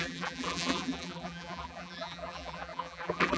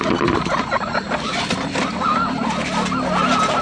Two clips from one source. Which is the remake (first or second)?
first